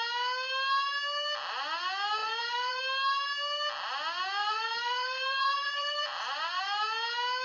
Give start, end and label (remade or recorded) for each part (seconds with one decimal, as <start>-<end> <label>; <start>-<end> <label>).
0.0-2.2 recorded; 2.2-2.8 remade; 2.8-4.4 recorded; 4.4-6.6 remade; 6.6-7.4 recorded